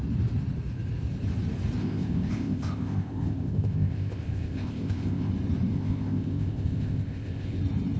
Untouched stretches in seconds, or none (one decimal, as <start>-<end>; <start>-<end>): 0.0-1.8; 5.3-5.7; 7.6-8.0